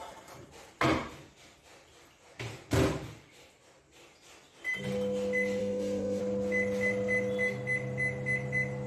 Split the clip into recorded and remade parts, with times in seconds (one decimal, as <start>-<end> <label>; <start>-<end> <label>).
0.0-5.6 recorded; 5.6-6.2 remade; 6.2-8.9 recorded